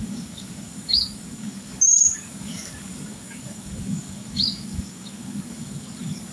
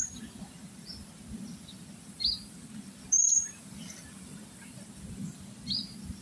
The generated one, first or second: first